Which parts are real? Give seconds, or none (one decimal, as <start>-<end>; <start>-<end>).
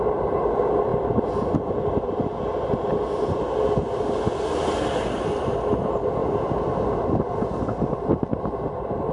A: 0.0-9.1